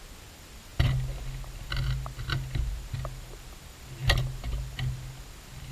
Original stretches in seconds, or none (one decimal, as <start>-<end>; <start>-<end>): 0.0-5.7